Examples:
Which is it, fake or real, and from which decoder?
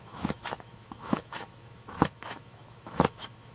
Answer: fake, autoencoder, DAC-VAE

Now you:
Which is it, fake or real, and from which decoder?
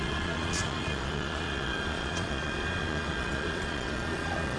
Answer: fake, vocoder, Vocos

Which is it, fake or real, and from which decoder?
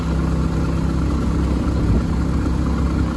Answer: real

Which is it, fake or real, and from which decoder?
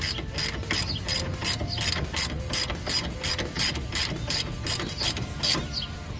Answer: real